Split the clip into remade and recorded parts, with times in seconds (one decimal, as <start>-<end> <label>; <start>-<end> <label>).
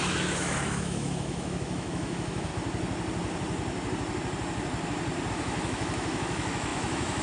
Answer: 0.0-2.5 remade; 2.5-5.3 recorded; 5.3-7.2 remade